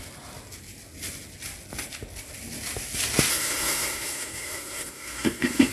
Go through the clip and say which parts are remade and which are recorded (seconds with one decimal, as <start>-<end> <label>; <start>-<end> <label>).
0.0-3.3 recorded; 3.3-5.7 remade